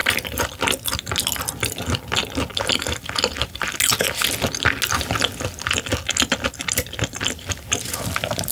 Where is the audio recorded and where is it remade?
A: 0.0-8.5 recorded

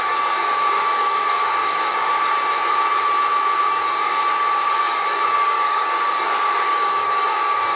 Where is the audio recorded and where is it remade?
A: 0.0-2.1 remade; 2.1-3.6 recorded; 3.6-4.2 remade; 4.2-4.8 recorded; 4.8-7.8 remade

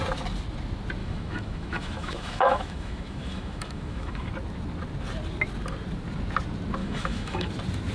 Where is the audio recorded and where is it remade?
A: 0.0-1.0 recorded; 1.0-4.3 remade; 4.3-6.8 recorded; 6.8-7.5 remade; 7.5-7.9 recorded